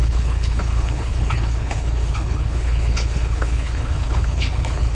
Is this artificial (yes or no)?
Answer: yes